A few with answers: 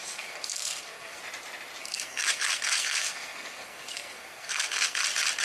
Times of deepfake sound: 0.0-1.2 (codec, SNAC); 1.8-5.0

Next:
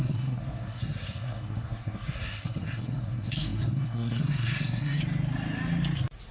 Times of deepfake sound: 0.0-5.0 (codec, SNAC)

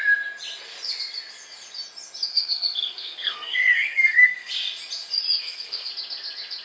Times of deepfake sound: 2.3-4.5 (codec, SNAC); 5.4-5.9

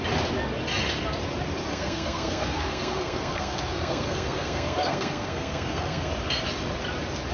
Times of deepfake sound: 1.7-6.1 (codec, SNAC)

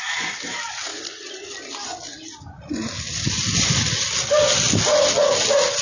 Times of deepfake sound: none

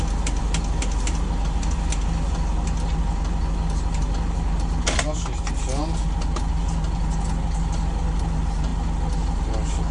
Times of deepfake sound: none